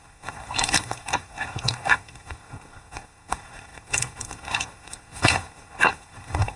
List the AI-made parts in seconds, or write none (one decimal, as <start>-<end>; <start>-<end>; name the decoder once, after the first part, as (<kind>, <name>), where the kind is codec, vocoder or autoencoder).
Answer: 0.0-6.6 (codec, SNAC)